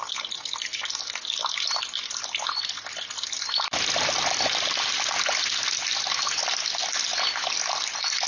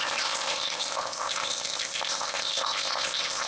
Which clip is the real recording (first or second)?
first